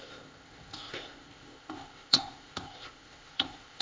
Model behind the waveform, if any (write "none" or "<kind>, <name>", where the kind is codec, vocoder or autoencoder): codec, ZipCodec